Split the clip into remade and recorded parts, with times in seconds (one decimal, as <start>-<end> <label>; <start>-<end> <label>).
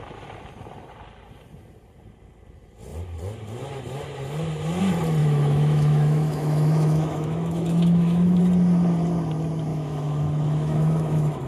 0.0-5.2 recorded; 5.2-8.4 remade; 8.4-9.7 recorded; 9.7-11.5 remade